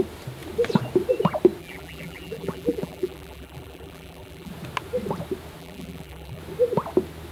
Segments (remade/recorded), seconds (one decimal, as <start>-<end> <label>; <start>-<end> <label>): 0.0-1.6 recorded; 1.6-4.5 remade; 4.5-5.6 recorded; 5.6-6.4 remade; 6.4-7.3 recorded